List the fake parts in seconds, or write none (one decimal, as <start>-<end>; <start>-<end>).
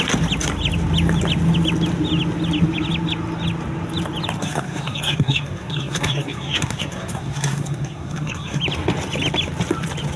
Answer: 4.4-8.6